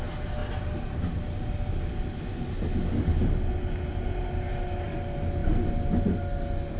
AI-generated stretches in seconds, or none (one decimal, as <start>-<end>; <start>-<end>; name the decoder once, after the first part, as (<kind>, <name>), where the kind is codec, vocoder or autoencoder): none